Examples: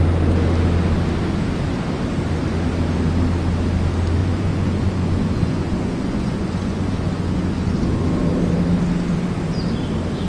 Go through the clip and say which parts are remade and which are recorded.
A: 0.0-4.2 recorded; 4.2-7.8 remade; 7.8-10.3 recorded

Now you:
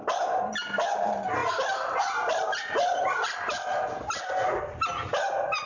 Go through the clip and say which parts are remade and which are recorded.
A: 0.0-5.7 recorded

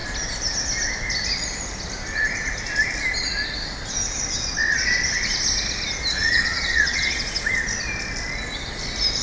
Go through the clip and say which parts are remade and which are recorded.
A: 0.0-6.2 recorded; 6.2-7.4 remade; 7.4-9.2 recorded

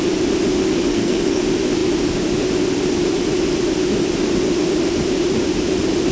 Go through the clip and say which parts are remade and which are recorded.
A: 0.0-0.9 recorded; 0.9-1.4 remade; 1.4-6.1 recorded